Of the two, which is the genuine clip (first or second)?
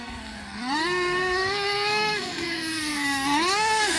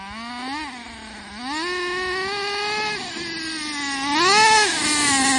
second